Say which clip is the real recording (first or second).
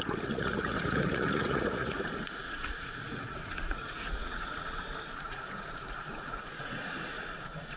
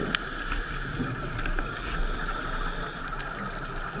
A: second